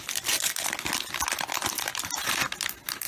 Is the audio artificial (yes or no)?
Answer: no